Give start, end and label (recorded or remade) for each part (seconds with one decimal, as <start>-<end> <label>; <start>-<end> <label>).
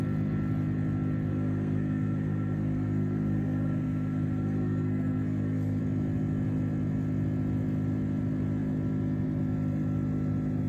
0.0-1.3 recorded; 1.3-5.8 remade; 5.8-10.7 recorded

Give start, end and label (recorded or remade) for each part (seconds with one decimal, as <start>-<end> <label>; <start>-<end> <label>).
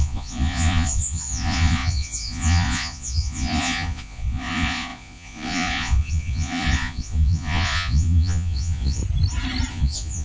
0.0-9.0 remade; 9.0-9.7 recorded; 9.7-10.2 remade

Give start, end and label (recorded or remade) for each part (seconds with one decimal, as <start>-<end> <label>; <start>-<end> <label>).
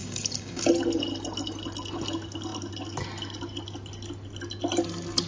0.0-0.6 remade; 0.6-5.3 recorded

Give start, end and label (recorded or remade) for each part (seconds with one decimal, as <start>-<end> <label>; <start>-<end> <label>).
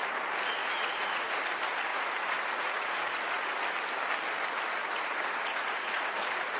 0.0-0.6 recorded; 0.6-1.4 remade; 1.4-1.9 recorded; 1.9-3.5 remade; 3.5-4.8 recorded; 4.8-6.6 remade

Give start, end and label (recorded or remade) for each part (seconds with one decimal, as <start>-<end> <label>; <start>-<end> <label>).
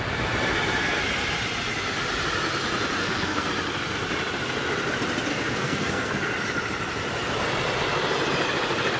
0.0-0.5 recorded; 0.5-1.0 remade; 1.0-3.0 recorded; 3.0-3.5 remade; 3.5-5.3 recorded; 5.3-6.3 remade; 6.3-9.0 recorded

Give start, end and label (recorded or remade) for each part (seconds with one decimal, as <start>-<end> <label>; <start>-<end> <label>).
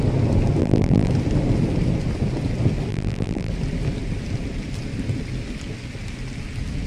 0.0-0.6 recorded; 0.6-1.1 remade; 1.1-2.9 recorded; 2.9-3.5 remade; 3.5-6.9 recorded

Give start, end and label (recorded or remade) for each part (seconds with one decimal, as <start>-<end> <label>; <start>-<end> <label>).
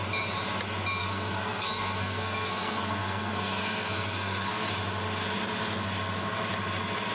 0.0-1.0 recorded; 1.0-4.7 remade; 4.7-7.1 recorded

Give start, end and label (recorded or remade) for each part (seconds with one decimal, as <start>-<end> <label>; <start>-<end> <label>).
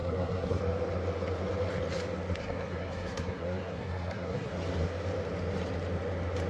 0.0-0.6 remade; 0.6-2.4 recorded; 2.4-4.5 remade; 4.5-6.5 recorded